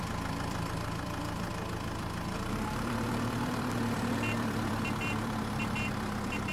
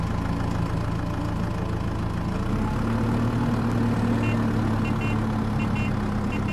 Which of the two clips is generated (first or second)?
first